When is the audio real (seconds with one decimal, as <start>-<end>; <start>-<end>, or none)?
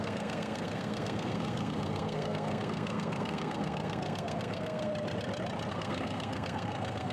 4.9-5.7